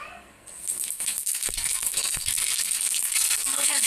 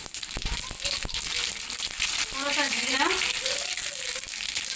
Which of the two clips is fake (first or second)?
first